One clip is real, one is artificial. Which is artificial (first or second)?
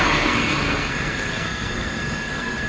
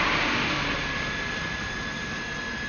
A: first